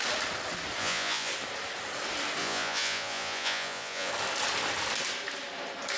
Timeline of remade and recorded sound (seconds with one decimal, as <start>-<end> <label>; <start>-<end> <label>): 0.0-0.8 recorded; 0.8-1.3 remade; 1.3-2.4 recorded; 2.4-4.1 remade; 4.1-6.0 recorded